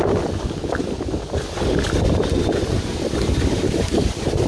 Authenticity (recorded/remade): recorded